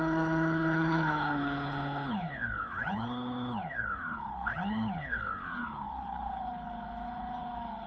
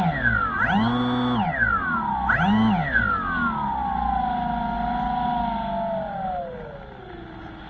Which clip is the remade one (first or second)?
first